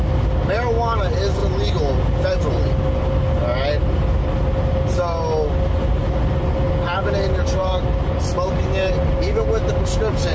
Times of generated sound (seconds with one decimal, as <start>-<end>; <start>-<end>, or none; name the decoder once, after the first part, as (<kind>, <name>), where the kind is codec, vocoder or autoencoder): none

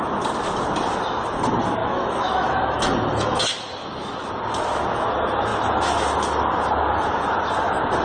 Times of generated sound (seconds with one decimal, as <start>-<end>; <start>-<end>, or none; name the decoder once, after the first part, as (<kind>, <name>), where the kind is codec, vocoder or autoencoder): 1.8-4.3 (autoencoder, DAC-VAE)

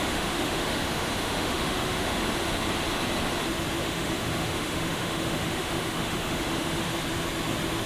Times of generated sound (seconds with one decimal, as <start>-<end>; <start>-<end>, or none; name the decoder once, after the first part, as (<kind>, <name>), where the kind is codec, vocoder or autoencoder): 0.0-2.2 (autoencoder, DAC-VAE); 3.8-6.9

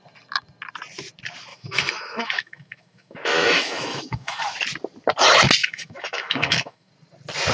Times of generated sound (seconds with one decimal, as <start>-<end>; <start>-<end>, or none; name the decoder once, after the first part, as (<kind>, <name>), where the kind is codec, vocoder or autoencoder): 1.5-4.4 (autoencoder, DAC-VAE); 5.6-6.9

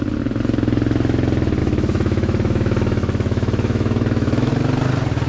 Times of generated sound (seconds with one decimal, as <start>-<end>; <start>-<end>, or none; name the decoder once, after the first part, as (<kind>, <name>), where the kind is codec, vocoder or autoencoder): 1.6-4.5 (autoencoder, DAC-VAE)

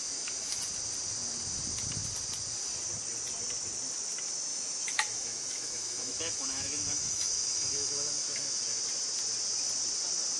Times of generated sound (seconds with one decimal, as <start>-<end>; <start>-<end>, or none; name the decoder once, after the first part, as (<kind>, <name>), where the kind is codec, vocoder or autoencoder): 0.0-0.6 (autoencoder, DAC-VAE); 4.5-8.8